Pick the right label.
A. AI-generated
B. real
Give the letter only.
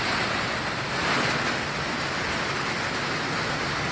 B